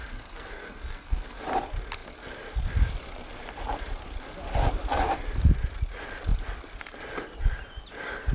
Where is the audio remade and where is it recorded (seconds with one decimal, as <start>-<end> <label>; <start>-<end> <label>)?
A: 0.0-1.4 remade; 1.4-8.3 recorded